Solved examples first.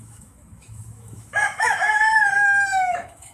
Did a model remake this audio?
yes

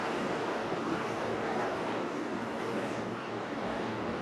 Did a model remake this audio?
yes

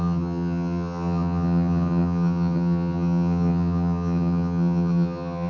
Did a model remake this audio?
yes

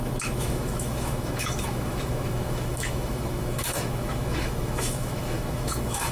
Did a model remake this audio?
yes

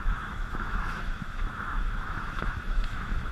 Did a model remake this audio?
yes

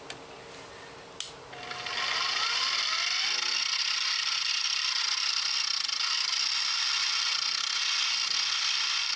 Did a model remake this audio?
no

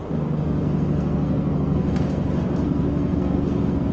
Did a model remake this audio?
yes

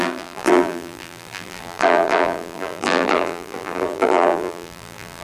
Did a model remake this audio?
yes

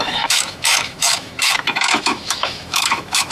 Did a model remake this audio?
yes